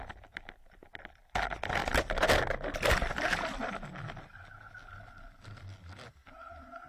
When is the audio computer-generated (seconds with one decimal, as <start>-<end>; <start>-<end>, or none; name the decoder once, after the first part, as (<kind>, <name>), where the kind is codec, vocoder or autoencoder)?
none